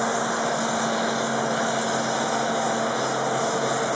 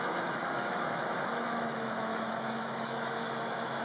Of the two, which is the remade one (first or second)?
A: second